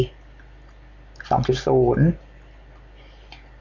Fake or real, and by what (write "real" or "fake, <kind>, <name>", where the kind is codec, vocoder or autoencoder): real